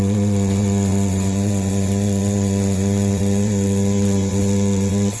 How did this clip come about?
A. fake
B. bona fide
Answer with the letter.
A